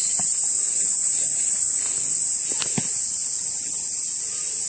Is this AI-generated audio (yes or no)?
no